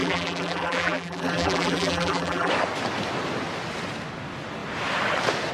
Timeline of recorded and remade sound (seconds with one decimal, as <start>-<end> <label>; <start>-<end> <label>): 0.0-2.5 remade; 2.5-5.5 recorded